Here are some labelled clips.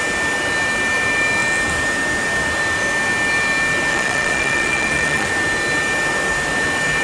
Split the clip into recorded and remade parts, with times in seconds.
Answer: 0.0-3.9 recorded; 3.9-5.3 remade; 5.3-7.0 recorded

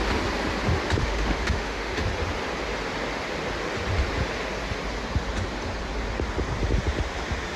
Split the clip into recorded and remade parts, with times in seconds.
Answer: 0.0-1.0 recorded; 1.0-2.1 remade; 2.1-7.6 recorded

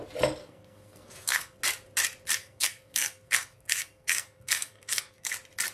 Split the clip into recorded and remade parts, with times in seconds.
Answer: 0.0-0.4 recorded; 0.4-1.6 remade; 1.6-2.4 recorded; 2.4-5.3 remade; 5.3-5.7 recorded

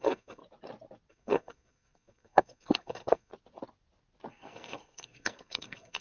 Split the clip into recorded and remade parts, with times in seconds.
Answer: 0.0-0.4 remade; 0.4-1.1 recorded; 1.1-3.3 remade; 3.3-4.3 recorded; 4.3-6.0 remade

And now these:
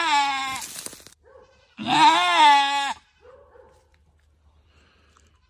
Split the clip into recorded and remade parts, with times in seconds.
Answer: 0.0-5.5 recorded

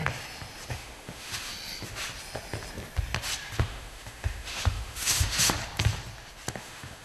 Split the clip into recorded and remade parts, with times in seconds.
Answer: 0.0-0.7 recorded; 0.7-1.5 remade; 1.5-3.6 recorded; 3.6-5.6 remade; 5.6-6.5 recorded; 6.5-7.0 remade